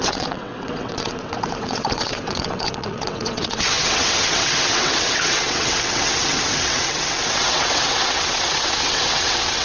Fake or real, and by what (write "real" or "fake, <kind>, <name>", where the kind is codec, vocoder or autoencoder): fake, vocoder, WaveNeXt